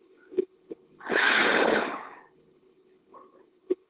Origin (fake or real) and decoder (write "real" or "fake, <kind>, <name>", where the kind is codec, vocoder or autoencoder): fake, codec, HILCodec